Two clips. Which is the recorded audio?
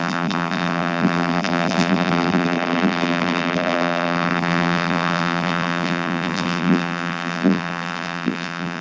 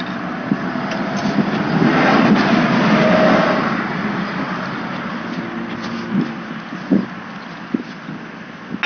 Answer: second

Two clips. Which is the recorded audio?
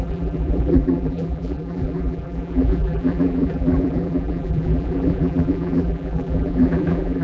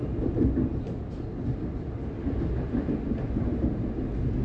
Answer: second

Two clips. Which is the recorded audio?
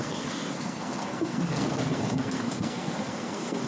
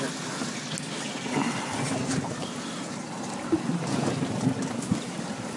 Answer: second